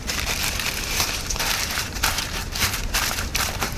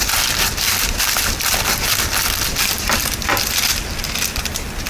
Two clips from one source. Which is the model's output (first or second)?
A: first